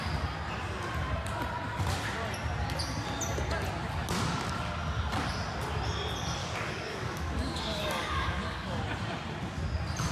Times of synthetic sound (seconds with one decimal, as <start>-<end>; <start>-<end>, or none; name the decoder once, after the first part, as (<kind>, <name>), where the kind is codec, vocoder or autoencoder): 6.4-8.8 (codec, DAC)